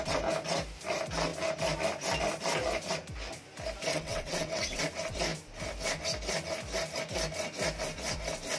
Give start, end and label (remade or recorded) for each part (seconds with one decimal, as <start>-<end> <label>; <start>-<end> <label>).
0.0-3.9 recorded; 3.9-4.8 remade; 4.8-8.6 recorded